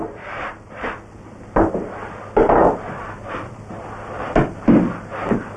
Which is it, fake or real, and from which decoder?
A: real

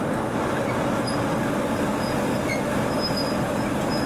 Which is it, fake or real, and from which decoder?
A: real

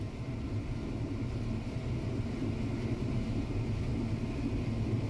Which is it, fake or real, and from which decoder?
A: real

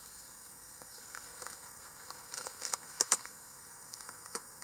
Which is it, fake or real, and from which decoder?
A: fake, codec, SNAC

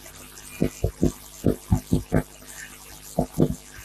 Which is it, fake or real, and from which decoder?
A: real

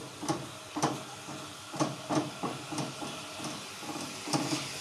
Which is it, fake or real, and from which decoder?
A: real